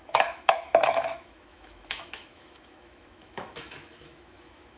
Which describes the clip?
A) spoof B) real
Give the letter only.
A